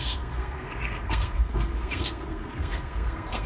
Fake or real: fake